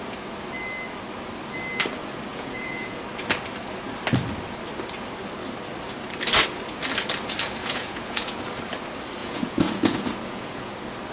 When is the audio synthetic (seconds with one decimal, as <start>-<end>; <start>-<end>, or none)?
2.3-3.0; 7.6-8.4; 9.2-10.7